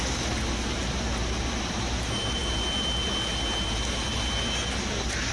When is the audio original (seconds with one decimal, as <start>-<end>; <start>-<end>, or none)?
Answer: 0.0-5.3